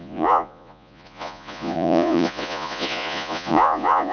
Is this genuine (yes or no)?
no